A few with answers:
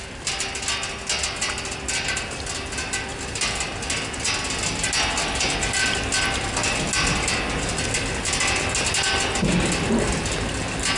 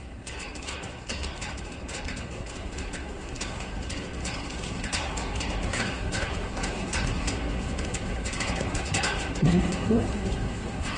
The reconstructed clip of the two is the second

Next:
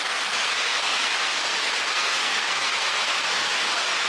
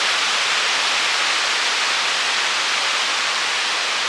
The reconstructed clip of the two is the first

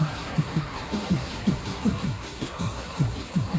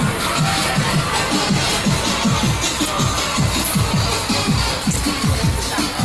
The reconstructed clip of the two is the first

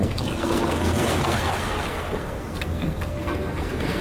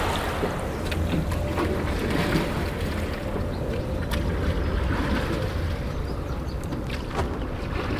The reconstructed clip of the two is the first